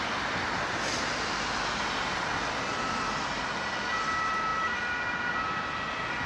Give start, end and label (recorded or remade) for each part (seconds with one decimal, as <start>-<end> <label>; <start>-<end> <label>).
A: 0.0-6.3 recorded